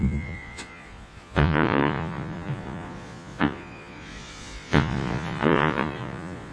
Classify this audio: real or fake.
fake